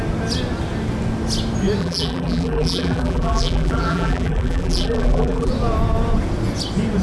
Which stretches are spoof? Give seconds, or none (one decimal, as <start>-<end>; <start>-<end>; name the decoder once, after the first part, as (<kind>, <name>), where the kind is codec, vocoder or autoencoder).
1.8-5.5 (vocoder, BigVGAN v2)